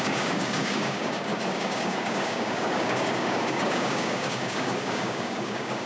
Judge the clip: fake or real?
fake